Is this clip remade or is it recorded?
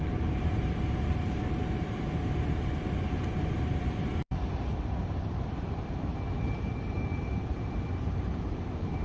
remade